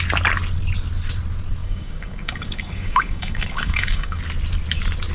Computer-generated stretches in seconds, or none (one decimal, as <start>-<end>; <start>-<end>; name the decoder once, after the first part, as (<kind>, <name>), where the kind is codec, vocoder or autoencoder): 1.6-4.2 (codec, DAC)